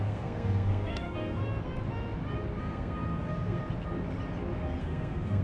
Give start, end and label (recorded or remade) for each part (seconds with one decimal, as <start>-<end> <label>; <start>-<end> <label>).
0.0-1.4 remade; 1.4-2.6 recorded; 2.6-3.6 remade; 3.6-4.8 recorded; 4.8-5.4 remade